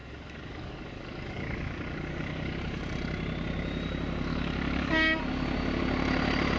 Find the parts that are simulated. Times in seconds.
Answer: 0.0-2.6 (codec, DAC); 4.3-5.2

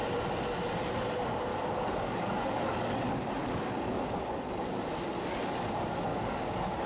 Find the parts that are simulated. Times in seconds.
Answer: 1.5-2.6 (codec, DAC); 3.4-4.9; 6.1-6.9